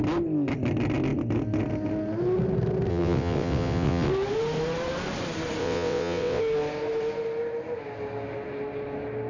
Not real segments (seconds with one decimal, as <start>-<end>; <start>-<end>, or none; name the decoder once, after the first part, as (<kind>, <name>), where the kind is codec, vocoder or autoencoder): 2.9-4.1 (vocoder, WaveNeXt); 5.6-6.4